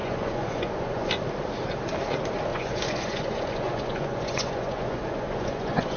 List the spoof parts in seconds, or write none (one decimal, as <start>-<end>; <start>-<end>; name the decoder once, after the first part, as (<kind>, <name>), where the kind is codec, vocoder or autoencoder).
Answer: 0.0-1.1 (vocoder, Vocos); 2.5-6.0